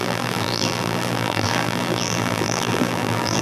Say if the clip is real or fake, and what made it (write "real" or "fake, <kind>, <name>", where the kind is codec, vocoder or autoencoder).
fake, vocoder, BigVGAN v2